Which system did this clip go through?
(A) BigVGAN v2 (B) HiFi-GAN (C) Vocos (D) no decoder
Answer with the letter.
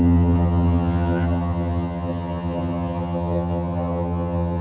B